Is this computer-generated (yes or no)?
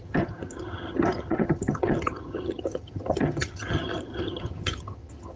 yes